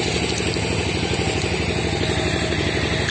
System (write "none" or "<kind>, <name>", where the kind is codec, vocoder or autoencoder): none